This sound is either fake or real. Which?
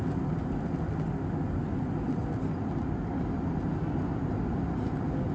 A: real